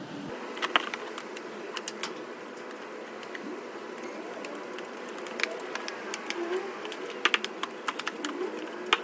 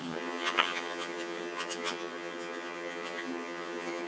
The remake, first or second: second